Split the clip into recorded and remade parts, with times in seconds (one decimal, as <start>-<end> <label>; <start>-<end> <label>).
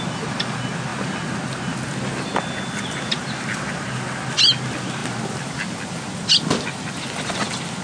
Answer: 0.0-7.8 recorded